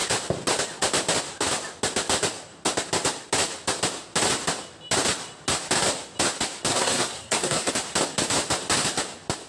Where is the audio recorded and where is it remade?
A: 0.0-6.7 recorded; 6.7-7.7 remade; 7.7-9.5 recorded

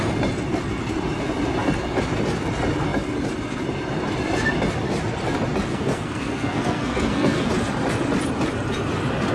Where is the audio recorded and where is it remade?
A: 0.0-5.7 recorded; 5.7-7.5 remade; 7.5-9.3 recorded

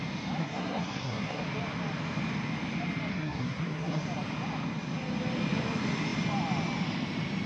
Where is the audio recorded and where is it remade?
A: 0.0-0.4 recorded; 0.4-1.4 remade; 1.4-3.1 recorded; 3.1-4.0 remade; 4.0-7.5 recorded

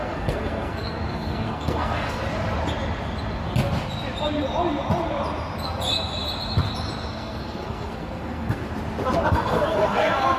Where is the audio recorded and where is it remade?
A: 0.0-2.2 remade; 2.2-7.1 recorded; 7.1-8.6 remade; 8.6-9.3 recorded; 9.3-10.4 remade

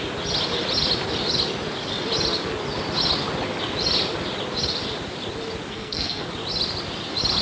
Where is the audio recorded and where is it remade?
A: 0.0-5.7 recorded; 5.7-6.3 remade; 6.3-7.4 recorded

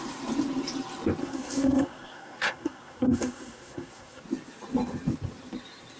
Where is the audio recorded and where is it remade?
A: 0.0-1.2 recorded; 1.2-4.2 remade; 4.2-6.0 recorded

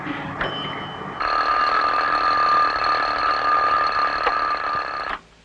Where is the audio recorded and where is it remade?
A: 0.0-5.4 recorded

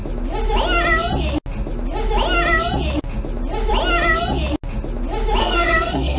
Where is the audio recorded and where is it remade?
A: 0.0-5.4 recorded; 5.4-6.2 remade